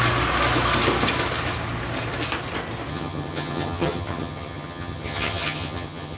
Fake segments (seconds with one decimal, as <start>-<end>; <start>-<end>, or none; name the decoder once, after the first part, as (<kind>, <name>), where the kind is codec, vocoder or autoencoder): 2.9-6.2 (vocoder, HiFi-GAN)